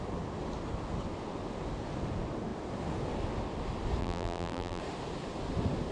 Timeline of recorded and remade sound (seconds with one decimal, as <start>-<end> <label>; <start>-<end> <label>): 0.0-4.0 recorded; 4.0-4.8 remade; 4.8-5.9 recorded